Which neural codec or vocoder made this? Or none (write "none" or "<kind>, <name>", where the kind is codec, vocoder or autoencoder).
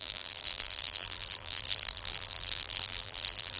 vocoder, BigVGAN v2